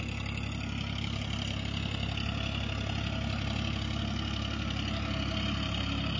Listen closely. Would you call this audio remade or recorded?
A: recorded